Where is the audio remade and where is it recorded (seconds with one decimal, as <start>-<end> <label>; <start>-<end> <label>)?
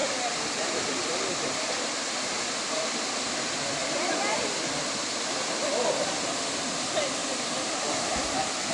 0.0-2.9 remade; 2.9-3.8 recorded; 3.8-6.6 remade; 6.6-7.2 recorded; 7.2-8.7 remade